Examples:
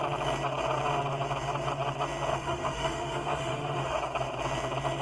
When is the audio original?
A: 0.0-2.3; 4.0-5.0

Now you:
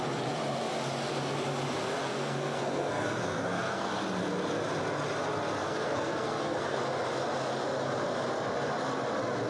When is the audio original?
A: 0.0-2.1; 3.9-5.6; 6.8-9.5

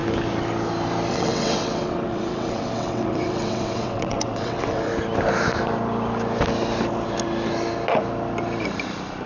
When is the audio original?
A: 0.0-1.1; 4.9-9.3

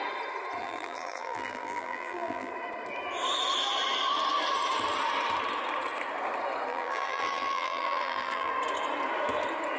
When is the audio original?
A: 0.0-0.6; 2.5-6.7; 8.5-9.8

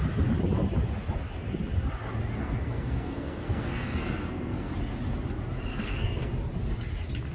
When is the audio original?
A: 0.0-2.4; 4.7-5.7; 6.3-7.3

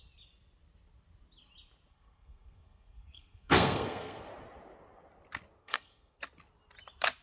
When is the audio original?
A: 0.0-1.9; 4.3-5.6; 6.2-7.2